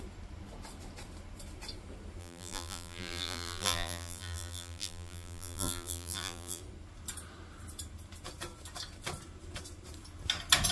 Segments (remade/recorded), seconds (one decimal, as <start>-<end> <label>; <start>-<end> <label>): 0.0-2.2 recorded; 2.2-6.6 remade; 6.6-10.7 recorded